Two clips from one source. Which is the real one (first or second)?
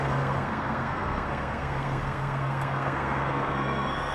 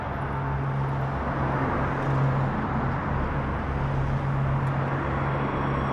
second